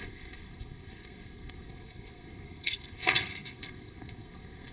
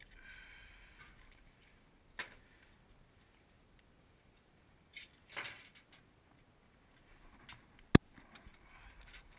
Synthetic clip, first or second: first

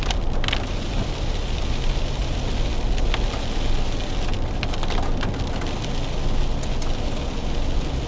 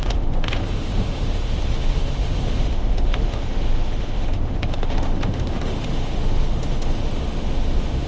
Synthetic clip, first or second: second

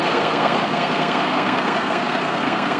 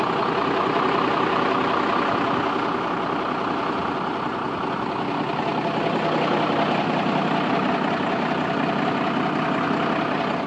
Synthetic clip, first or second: first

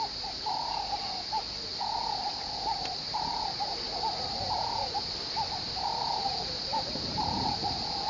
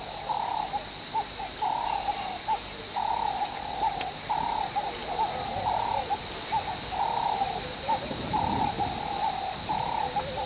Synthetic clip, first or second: first